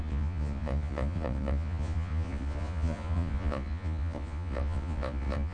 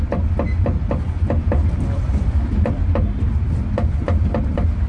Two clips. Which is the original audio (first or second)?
second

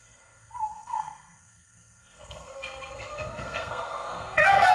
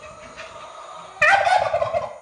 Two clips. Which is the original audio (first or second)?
second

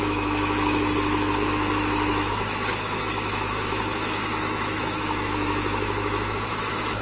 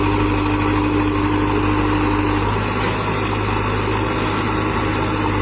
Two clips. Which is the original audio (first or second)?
second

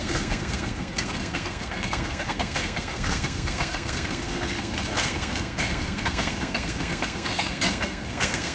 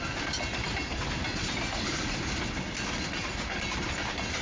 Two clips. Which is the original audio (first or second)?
second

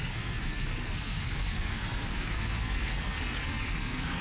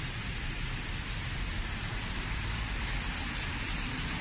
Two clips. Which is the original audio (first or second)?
second